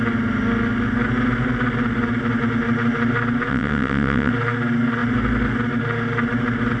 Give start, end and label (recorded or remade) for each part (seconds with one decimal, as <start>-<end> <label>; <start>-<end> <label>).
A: 0.0-3.5 recorded; 3.5-4.3 remade; 4.3-6.8 recorded